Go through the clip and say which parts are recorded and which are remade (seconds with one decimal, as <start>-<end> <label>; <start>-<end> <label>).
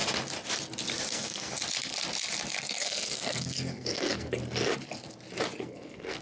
0.0-1.1 recorded; 1.1-1.6 remade; 1.6-2.6 recorded; 2.6-4.4 remade; 4.4-5.6 recorded; 5.6-6.2 remade